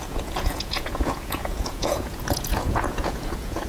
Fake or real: fake